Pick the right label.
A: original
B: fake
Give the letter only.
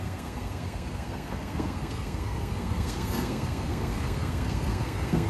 B